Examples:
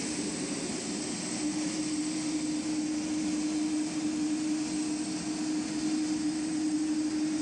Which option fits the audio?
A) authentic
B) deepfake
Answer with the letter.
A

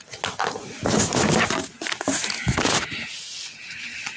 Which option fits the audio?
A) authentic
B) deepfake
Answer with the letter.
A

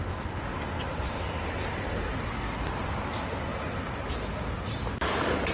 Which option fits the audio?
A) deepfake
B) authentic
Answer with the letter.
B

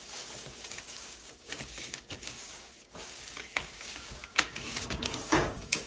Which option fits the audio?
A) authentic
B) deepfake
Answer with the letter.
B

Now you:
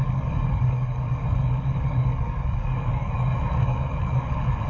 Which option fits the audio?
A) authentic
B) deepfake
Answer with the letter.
B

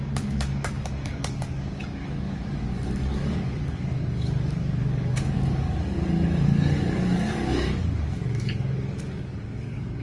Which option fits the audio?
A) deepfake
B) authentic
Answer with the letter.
A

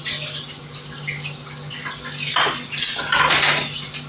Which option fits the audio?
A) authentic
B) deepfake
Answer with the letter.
A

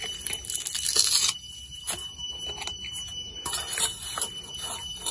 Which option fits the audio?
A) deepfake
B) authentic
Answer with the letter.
B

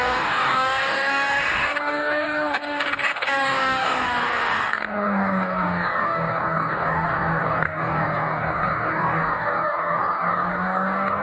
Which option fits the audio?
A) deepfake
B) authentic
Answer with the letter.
A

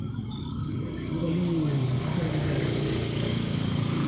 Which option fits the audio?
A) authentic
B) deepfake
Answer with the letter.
B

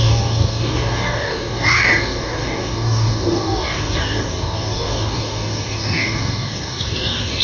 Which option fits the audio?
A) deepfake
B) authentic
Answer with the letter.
A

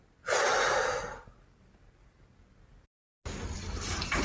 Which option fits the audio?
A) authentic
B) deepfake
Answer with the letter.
A